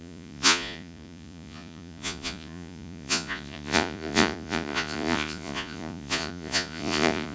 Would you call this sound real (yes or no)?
no